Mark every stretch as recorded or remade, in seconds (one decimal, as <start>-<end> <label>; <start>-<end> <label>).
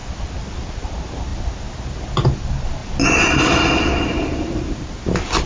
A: 0.0-5.5 recorded